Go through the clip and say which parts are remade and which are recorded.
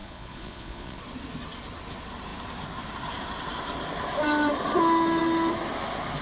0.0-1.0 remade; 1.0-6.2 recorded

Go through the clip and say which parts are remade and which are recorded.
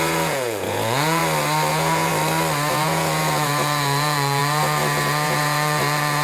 0.0-1.2 remade; 1.2-1.7 recorded; 1.7-2.1 remade; 2.1-2.7 recorded; 2.7-6.2 remade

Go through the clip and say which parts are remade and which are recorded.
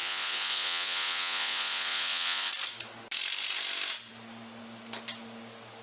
0.0-2.5 remade; 2.5-5.8 recorded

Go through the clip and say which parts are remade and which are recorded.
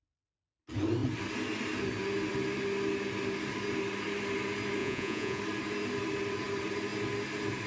0.0-4.8 recorded; 4.8-5.4 remade; 5.4-7.7 recorded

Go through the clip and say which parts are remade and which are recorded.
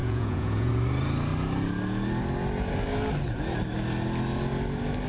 0.0-0.7 remade; 0.7-5.1 recorded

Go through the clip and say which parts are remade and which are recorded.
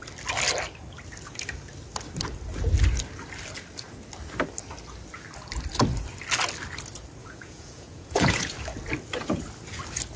0.0-7.2 recorded; 7.2-8.4 remade; 8.4-10.2 recorded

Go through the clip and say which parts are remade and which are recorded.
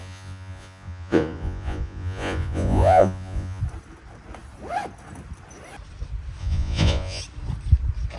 0.0-3.6 remade; 3.6-6.4 recorded; 6.4-7.2 remade; 7.2-8.2 recorded